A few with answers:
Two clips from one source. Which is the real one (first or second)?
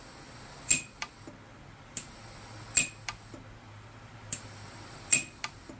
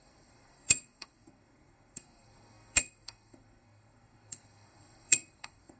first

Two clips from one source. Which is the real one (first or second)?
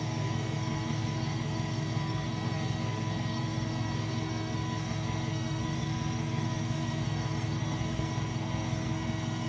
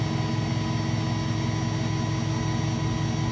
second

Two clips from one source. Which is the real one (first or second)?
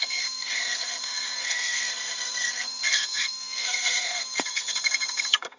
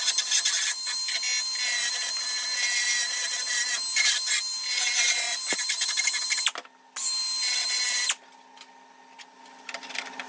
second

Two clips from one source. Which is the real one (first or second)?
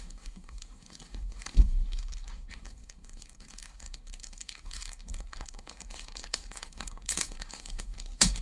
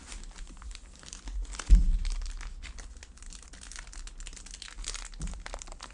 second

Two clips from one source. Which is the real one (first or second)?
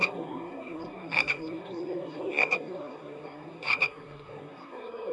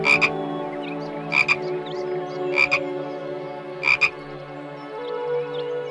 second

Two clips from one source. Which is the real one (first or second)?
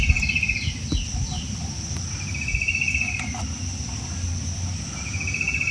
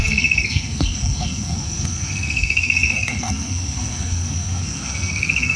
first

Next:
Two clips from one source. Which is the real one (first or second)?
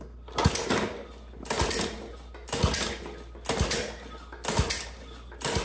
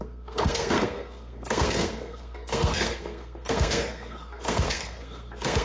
first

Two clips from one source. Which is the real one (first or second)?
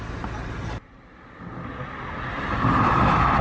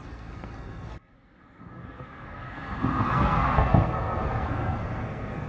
first